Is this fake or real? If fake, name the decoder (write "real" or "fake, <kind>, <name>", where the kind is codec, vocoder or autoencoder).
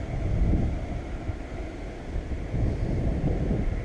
real